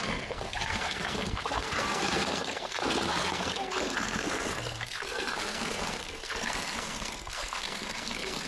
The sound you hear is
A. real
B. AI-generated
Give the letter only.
B